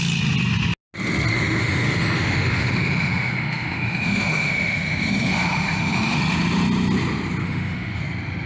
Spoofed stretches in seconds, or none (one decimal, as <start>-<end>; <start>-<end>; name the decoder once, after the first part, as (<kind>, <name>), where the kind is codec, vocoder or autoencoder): 1.3-6.2 (autoencoder, DAC-VAE); 7.4-8.0